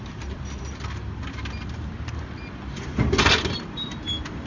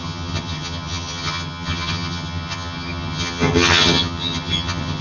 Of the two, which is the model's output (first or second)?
second